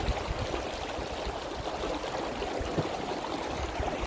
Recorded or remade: recorded